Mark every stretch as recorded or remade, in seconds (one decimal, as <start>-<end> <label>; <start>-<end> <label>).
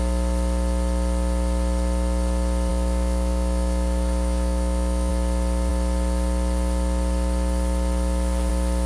0.0-2.7 recorded; 2.7-5.1 remade; 5.1-8.9 recorded